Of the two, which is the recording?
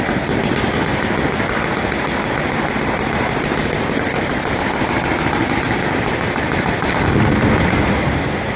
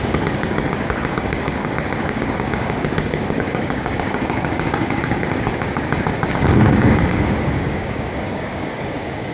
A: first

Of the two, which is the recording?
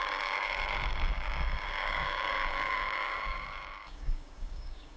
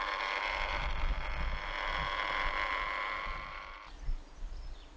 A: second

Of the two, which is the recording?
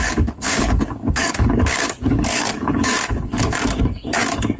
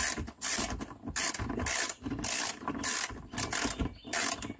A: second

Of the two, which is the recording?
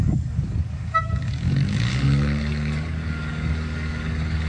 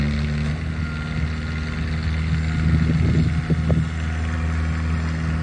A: second